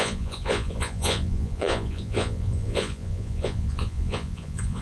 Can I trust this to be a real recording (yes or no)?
no